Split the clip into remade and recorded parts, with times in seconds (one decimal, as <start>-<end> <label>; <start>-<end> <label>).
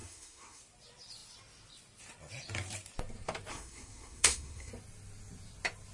0.0-0.6 remade; 0.6-3.5 recorded; 3.5-4.7 remade; 4.7-5.9 recorded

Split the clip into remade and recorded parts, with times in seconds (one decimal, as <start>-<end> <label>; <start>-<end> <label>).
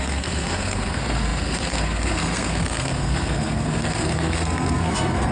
0.0-5.3 remade